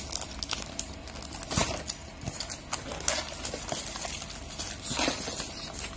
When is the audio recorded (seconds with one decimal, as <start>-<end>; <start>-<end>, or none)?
0.0-6.0